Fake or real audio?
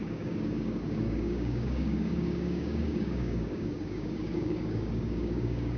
fake